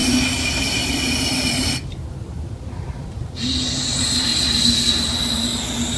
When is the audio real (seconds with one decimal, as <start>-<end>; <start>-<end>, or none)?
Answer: 0.0-6.0